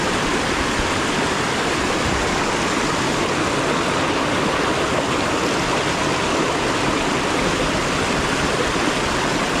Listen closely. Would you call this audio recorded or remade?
recorded